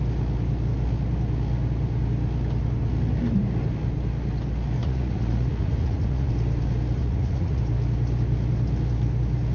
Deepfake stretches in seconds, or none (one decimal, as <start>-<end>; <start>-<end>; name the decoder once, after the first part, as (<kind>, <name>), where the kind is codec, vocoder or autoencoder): 4.8-6.3 (vocoder, Vocos); 7.0-7.6